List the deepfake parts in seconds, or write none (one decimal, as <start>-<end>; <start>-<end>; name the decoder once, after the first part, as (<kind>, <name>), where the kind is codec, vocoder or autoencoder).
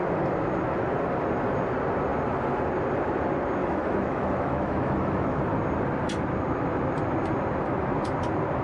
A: 3.6-5.4 (autoencoder, DAC-VAE)